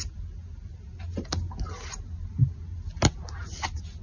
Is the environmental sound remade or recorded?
recorded